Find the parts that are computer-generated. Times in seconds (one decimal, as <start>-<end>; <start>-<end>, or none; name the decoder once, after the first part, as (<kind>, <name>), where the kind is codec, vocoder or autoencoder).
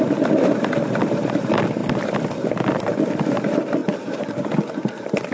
none